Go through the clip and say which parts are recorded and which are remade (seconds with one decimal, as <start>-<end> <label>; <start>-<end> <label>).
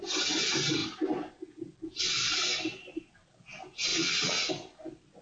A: 0.0-3.9 recorded; 3.9-4.5 remade; 4.5-5.2 recorded